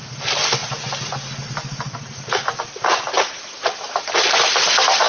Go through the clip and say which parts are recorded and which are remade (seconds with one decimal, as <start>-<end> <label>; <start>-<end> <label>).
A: 0.0-5.1 recorded